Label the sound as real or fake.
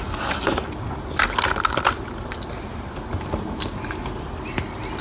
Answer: real